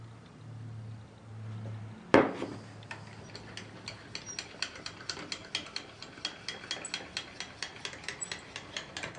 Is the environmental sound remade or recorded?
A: recorded